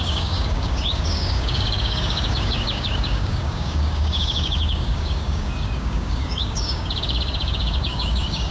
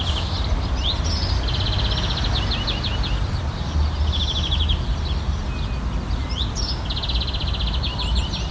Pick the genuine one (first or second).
second